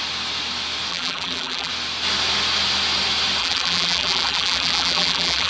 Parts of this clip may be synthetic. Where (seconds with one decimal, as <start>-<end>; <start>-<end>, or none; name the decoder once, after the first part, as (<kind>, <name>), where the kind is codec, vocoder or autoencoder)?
0.9-1.7 (vocoder, BigVGAN v2); 3.4-5.5